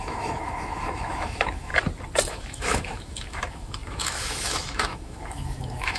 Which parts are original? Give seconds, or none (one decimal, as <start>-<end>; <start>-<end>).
1.7-2.3